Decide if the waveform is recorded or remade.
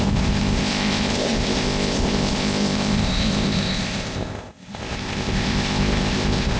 remade